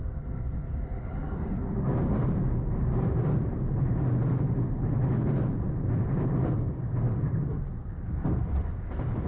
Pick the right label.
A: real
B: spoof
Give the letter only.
A